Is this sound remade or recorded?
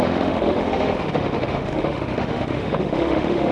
remade